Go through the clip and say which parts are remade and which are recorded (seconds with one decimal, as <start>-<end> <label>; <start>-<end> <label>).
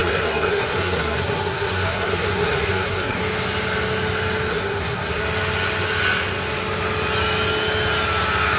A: 0.0-3.2 remade; 3.2-4.5 recorded; 4.5-5.2 remade; 5.2-8.6 recorded